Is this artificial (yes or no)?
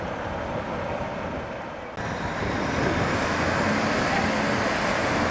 no